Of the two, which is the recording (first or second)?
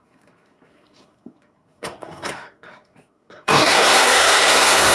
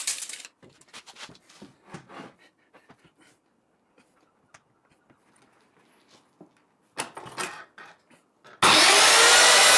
second